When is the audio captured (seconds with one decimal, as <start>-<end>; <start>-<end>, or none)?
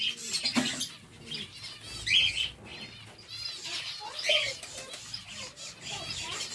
0.0-6.5